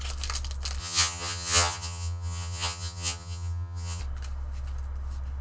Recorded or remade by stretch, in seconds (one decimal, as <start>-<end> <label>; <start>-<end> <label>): 0.0-0.8 recorded; 0.8-4.0 remade; 4.0-5.4 recorded